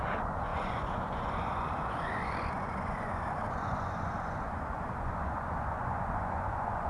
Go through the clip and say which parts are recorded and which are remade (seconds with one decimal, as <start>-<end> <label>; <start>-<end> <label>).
0.0-6.9 remade